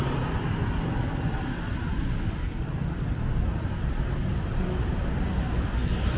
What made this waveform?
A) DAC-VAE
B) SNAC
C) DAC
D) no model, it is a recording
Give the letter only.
D